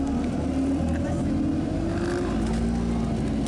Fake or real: real